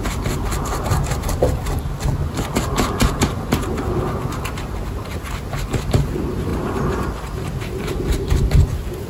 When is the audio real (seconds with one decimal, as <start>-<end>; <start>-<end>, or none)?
0.0-6.5; 7.6-9.1